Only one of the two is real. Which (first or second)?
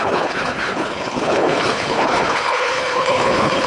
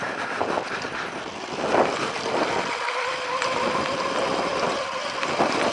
second